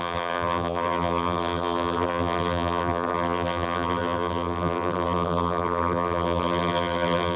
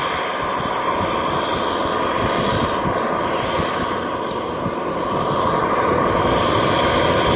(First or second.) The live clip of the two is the second